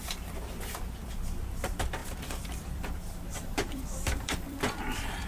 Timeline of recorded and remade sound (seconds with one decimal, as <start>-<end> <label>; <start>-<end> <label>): 0.0-5.3 remade